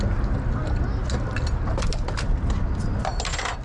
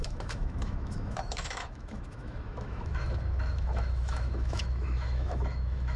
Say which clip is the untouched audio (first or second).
first